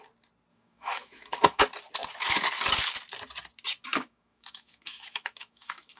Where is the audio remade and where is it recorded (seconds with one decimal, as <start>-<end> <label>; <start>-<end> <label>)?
0.0-0.5 recorded; 0.5-1.6 remade; 1.6-3.9 recorded; 3.9-6.0 remade